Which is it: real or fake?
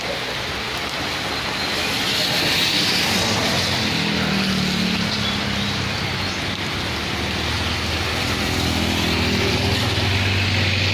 real